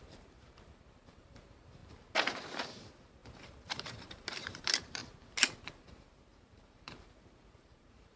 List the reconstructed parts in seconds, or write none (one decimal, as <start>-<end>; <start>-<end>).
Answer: 0.0-1.8; 2.7-5.0; 5.7-8.2